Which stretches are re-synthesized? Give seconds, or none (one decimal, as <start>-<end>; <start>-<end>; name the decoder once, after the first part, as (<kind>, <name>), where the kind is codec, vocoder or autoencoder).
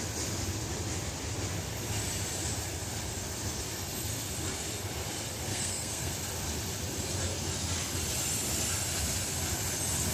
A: 5.5-6.1 (codec, SNAC)